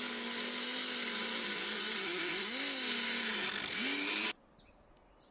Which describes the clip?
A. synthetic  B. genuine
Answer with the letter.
B